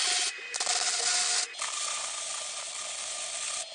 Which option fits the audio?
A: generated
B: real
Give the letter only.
B